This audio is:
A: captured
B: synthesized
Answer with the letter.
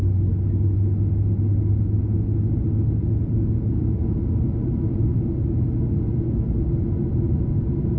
A